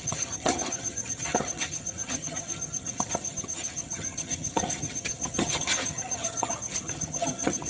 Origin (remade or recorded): remade